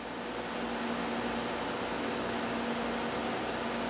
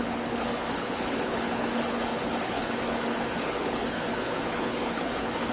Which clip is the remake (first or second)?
second